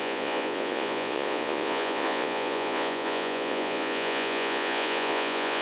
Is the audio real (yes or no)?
no